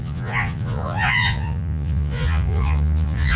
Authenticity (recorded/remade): remade